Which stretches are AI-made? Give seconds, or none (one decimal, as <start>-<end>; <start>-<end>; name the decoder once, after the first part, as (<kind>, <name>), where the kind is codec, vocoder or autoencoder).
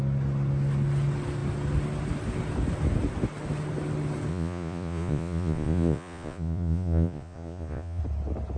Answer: 4.3-8.0 (vocoder, Vocos)